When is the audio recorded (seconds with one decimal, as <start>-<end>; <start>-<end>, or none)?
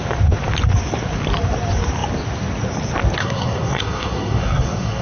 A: 0.0-3.2